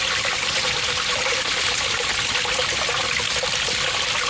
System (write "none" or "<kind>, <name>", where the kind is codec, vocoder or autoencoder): none